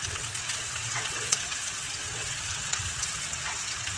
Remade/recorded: remade